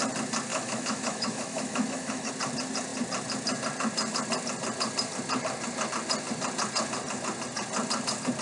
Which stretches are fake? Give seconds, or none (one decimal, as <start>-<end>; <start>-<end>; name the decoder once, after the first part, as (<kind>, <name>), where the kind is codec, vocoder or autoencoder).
0.5-2.3 (autoencoder, DAC-VAE)

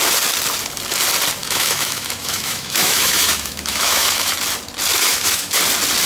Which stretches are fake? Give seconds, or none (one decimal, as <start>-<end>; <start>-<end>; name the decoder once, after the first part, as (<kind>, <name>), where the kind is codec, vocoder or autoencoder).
1.4-4.3 (autoencoder, DAC-VAE); 4.9-5.6